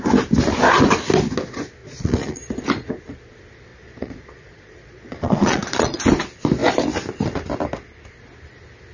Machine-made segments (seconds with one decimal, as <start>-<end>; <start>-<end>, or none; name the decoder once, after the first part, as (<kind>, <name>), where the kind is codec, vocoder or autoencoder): 1.8-2.4 (vocoder, Vocos); 3.7-6.0

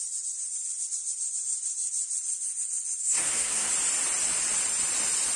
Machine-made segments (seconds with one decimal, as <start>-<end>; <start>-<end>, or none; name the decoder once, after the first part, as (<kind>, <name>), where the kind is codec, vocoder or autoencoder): 3.0-3.7 (codec, SNAC)

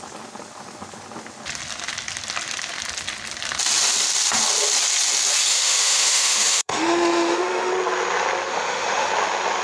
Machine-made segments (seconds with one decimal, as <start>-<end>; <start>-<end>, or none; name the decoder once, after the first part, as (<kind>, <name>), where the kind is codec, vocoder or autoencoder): 5.5-7.7 (autoencoder, DAC-VAE); 8.5-9.1

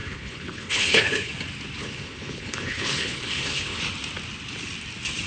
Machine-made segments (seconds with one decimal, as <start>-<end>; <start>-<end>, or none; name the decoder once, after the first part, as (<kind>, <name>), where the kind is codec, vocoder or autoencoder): 0.0-1.3 (codec, HILCodec); 1.8-3.8

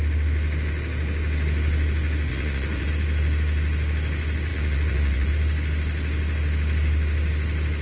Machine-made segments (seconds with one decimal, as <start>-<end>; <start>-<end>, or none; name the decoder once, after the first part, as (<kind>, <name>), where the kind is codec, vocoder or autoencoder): 2.3-2.9 (vocoder, Vocos); 4.5-5.3

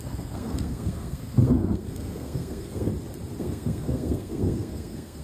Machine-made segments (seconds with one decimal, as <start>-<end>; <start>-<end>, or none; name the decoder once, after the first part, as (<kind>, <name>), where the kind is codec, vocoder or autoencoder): 0.0-2.9 (codec, SNAC); 3.4-5.2